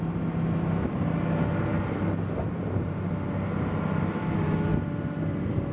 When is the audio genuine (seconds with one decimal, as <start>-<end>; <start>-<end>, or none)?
0.0-5.7